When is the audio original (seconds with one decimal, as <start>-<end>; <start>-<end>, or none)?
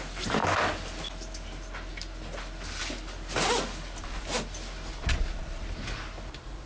0.0-5.0; 5.6-6.7